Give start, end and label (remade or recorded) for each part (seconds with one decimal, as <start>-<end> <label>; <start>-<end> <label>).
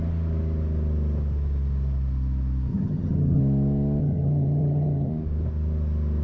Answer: 0.0-2.7 recorded; 2.7-3.4 remade; 3.4-4.0 recorded; 4.0-5.1 remade; 5.1-6.2 recorded